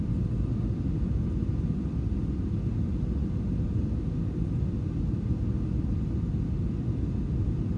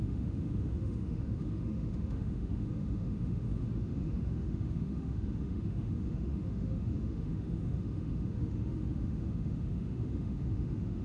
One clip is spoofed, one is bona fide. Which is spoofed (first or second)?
second